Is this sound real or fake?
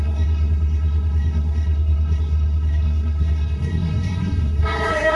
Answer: fake